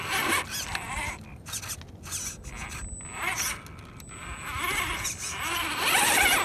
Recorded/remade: recorded